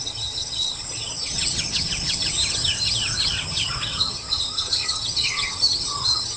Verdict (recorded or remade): remade